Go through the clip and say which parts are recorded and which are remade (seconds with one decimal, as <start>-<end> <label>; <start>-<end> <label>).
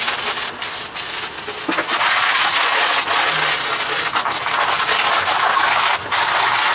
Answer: 0.0-1.9 recorded; 1.9-3.3 remade; 3.3-6.7 recorded